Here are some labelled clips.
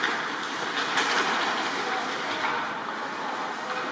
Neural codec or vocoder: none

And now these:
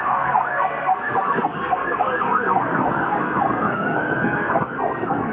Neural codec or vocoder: codec, SNAC